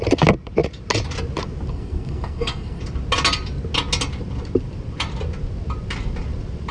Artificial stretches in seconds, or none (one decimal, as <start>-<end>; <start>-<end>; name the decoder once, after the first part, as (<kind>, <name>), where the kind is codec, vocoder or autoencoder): 1.7-2.8 (codec, SNAC)